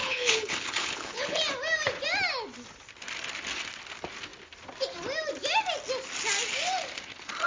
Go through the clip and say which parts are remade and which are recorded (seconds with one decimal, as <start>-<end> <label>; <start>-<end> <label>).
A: 0.0-1.4 remade; 1.4-7.5 recorded